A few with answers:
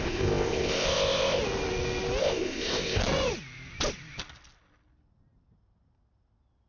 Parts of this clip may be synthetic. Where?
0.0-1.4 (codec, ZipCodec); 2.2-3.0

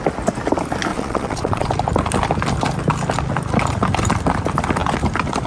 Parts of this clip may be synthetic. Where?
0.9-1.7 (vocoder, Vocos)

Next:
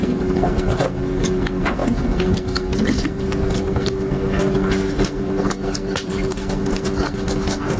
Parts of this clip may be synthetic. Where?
0.0-7.8 (codec, SNAC)

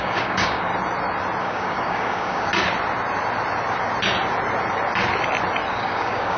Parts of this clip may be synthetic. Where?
0.0-0.7 (codec, DAC); 1.4-2.5; 5.7-6.4

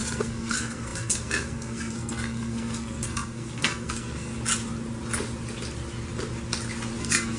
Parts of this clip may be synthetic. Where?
0.0-4.3 (codec, SNAC); 7.0-7.4

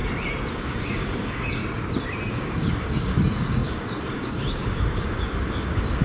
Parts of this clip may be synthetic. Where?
0.5-1.6 (codec, DAC); 2.3-6.0